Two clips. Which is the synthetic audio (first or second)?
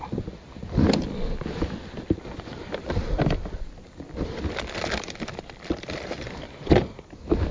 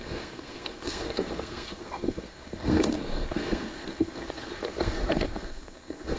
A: second